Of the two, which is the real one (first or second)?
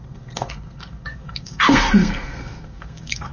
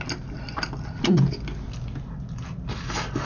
second